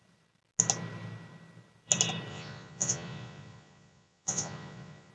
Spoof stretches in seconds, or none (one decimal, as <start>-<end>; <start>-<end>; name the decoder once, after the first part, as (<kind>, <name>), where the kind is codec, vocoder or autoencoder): 2.3-5.1 (vocoder, Vocos)